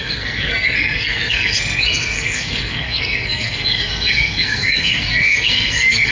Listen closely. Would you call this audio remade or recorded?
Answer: remade